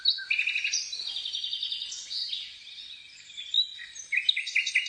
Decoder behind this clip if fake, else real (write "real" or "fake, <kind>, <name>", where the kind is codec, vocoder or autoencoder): real